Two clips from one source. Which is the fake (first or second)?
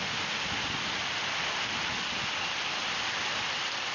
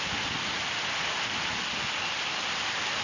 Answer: first